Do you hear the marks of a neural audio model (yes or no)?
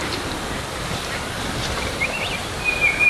yes